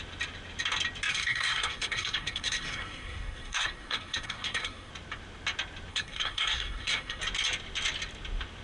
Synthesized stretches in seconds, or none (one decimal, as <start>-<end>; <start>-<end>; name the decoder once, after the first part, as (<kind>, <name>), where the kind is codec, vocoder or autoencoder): 1.1-4.9 (codec, SNAC); 5.9-7.2